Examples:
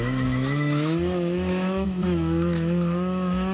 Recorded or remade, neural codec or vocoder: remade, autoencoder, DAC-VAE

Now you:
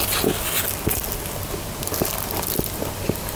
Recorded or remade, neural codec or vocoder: recorded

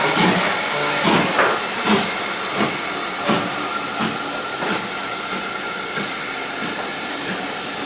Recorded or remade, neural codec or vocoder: recorded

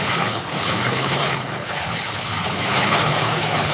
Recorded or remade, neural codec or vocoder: remade, codec, HILCodec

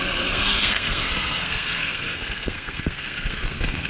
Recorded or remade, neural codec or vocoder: remade, codec, SNAC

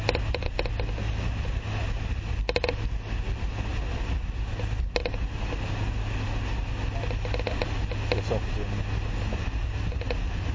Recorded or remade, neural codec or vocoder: recorded